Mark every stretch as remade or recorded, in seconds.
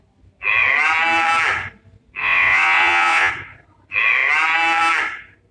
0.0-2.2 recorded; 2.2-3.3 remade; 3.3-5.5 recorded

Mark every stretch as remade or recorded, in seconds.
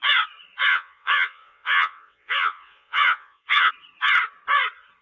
0.0-0.7 recorded; 0.7-3.7 remade; 3.7-5.0 recorded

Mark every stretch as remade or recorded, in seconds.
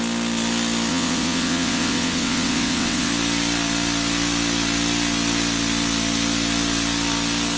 0.0-0.9 recorded; 0.9-3.1 remade; 3.1-7.6 recorded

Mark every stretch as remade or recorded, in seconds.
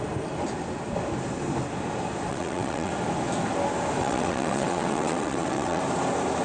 0.0-2.3 recorded; 2.3-2.9 remade; 2.9-4.0 recorded; 4.0-5.8 remade; 5.8-6.4 recorded